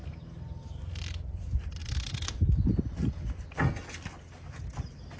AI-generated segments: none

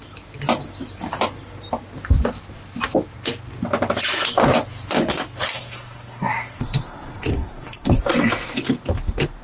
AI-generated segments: 5.5-6.6 (codec, SNAC); 7.3-8.0

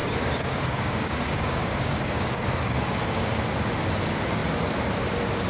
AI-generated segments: 0.0-3.3 (codec, DAC)

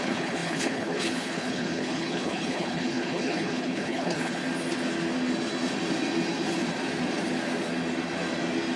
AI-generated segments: 0.0-4.4 (codec, HILCodec)

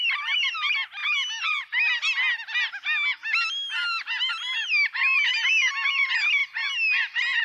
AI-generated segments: 0.0-1.0 (vocoder, BigVGAN v2); 4.3-6.4

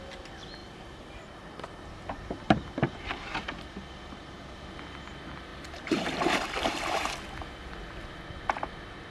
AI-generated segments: 0.6-3.4 (vocoder, BigVGAN v2); 5.5-7.1